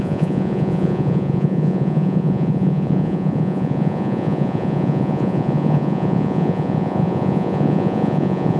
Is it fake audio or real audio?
fake